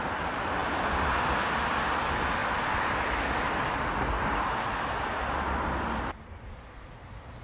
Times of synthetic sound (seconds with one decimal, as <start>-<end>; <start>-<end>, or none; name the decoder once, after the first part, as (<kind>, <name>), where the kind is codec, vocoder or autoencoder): none